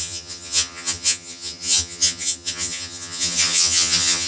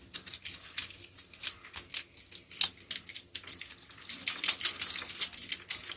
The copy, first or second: first